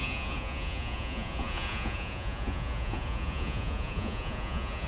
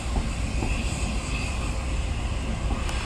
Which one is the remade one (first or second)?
first